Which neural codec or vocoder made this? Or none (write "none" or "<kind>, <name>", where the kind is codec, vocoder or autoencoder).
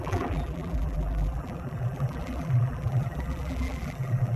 vocoder, BigVGAN v2